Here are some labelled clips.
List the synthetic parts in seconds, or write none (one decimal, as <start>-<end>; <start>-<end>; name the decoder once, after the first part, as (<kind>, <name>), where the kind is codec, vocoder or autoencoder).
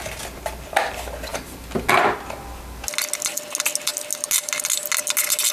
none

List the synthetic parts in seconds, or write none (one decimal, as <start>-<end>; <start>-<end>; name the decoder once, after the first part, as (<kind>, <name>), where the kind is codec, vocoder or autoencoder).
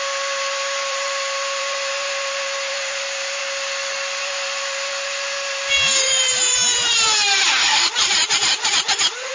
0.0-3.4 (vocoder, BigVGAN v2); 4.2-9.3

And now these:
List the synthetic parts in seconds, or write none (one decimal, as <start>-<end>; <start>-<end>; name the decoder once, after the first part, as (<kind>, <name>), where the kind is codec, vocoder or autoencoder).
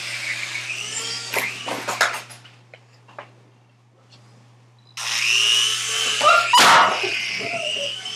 5.5-6.3 (vocoder, BigVGAN v2); 7.1-8.2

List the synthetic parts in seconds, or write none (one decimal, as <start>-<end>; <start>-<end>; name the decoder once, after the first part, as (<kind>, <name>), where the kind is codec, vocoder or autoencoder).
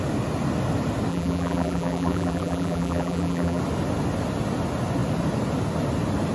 1.1-3.6 (vocoder, BigVGAN v2)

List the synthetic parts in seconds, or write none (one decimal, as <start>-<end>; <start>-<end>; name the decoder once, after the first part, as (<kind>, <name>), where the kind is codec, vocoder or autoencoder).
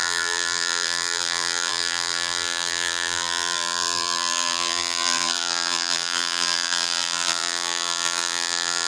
0.0-8.9 (vocoder, BigVGAN v2)